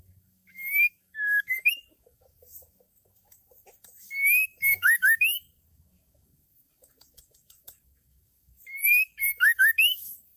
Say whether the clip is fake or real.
fake